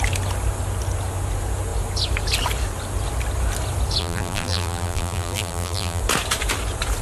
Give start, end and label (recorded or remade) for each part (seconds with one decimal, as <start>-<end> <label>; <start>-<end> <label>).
0.0-4.0 recorded; 4.0-6.0 remade; 6.0-7.0 recorded